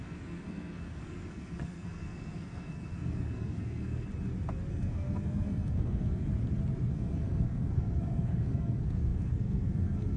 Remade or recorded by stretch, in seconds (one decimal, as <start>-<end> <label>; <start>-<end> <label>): 0.0-4.1 remade; 4.1-4.7 recorded; 4.7-6.2 remade; 6.2-6.9 recorded; 6.9-10.2 remade